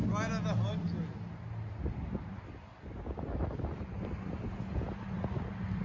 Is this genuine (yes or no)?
yes